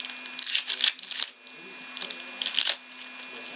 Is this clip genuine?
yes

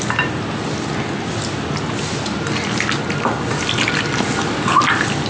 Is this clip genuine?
yes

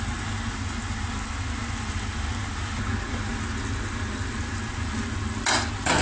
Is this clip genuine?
yes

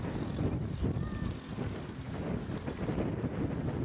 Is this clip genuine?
yes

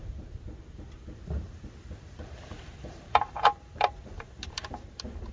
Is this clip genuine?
no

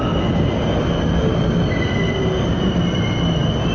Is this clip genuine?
yes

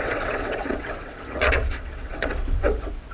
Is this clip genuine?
no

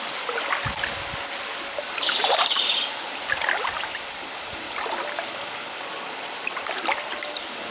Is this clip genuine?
yes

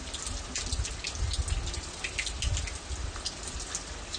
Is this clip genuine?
yes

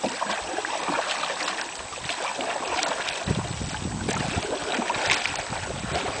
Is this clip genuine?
yes